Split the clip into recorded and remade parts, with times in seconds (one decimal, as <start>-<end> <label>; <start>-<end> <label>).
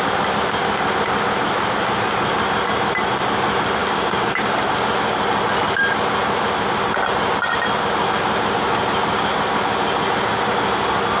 0.0-3.8 recorded; 3.8-4.7 remade; 4.7-11.2 recorded